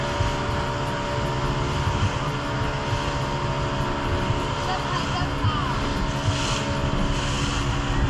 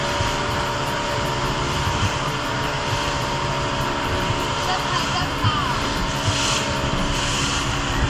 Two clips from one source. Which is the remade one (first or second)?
second